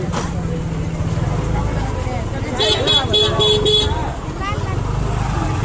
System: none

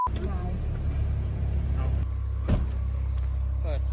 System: none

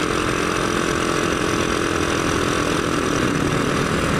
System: none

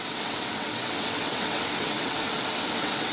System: vocoder, WaveNeXt